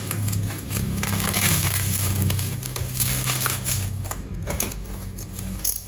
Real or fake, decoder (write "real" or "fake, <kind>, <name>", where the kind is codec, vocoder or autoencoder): fake, codec, DAC